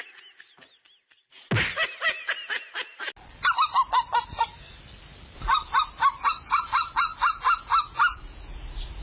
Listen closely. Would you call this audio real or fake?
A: real